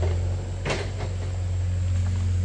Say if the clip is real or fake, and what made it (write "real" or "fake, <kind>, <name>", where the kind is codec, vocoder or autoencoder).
real